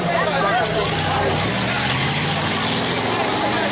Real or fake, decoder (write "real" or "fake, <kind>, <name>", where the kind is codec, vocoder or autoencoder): real